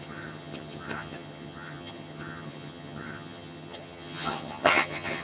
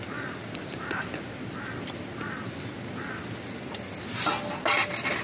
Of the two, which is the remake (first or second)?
first